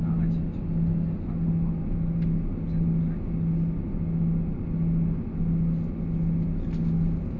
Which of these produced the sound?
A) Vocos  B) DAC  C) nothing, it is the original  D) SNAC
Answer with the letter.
C